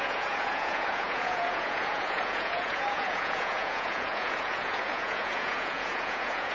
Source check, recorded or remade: remade